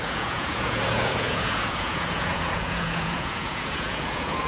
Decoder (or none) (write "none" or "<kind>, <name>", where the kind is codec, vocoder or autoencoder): vocoder, Vocos